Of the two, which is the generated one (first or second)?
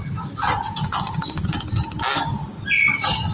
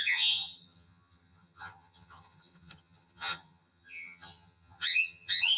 second